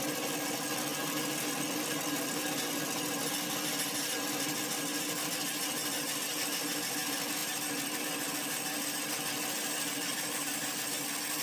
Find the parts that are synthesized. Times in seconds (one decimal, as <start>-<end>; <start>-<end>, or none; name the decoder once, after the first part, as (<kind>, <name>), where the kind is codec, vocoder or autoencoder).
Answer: none